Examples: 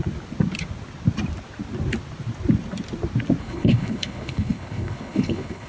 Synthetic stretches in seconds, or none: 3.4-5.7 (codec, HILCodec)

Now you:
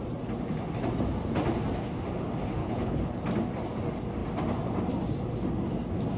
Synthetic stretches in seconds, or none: 2.6-3.2 (codec, HILCodec)

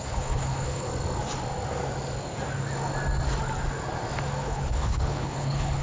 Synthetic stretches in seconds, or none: 0.0-0.9 (codec, HILCodec); 4.4-5.8